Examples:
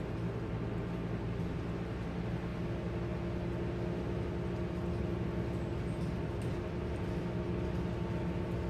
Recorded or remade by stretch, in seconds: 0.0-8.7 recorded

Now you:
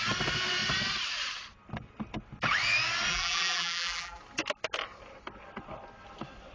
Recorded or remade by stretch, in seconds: 0.0-3.1 recorded; 3.1-4.2 remade; 4.2-6.5 recorded

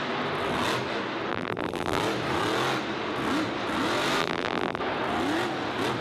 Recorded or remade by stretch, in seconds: 0.0-1.3 recorded; 1.3-2.0 remade; 2.0-4.2 recorded; 4.2-4.8 remade; 4.8-6.0 recorded

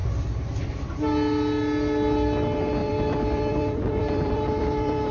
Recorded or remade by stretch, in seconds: 0.0-1.0 remade; 1.0-2.8 recorded; 2.8-5.1 remade